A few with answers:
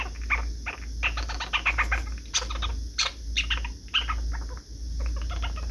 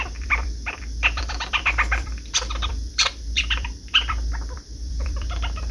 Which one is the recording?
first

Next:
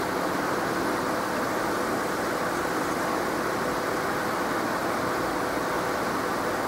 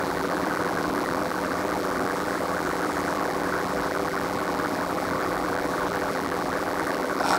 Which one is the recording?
first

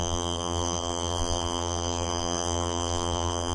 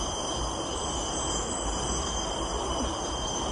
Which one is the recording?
second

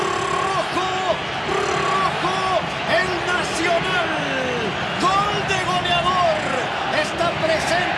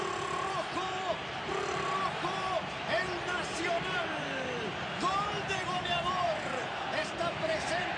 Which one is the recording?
first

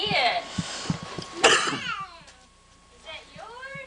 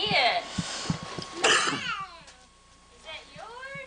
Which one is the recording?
second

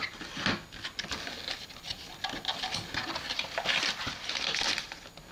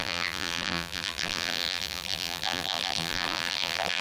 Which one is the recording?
first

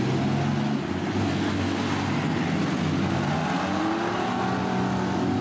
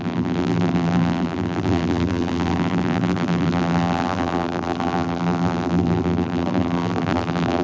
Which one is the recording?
first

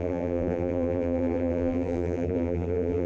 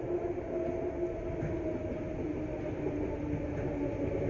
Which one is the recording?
second